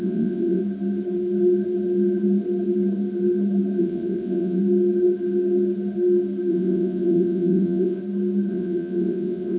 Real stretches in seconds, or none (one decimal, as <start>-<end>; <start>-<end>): 0.6-3.8; 4.6-6.5; 8.0-8.5